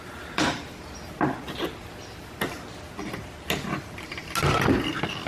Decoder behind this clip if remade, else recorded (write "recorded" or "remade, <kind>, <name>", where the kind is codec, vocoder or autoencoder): recorded